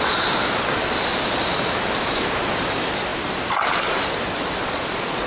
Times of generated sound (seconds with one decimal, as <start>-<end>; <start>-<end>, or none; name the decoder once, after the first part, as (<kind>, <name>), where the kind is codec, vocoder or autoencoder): 4.6-5.3 (vocoder, Vocos)